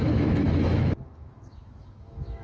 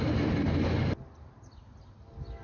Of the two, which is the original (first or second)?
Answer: second